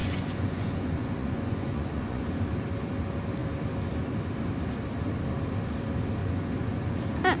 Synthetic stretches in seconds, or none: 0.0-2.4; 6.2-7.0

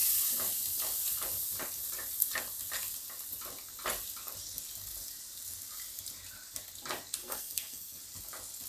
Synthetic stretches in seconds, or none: 7.2-8.0

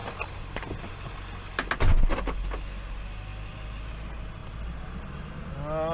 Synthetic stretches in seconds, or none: none

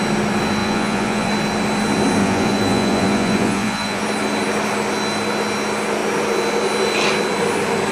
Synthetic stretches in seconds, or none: 0.6-1.3; 2.2-4.0

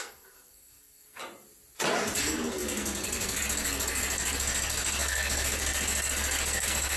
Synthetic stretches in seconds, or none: 0.0-1.2; 2.2-7.0

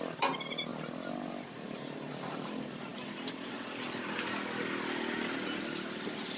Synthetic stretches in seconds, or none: none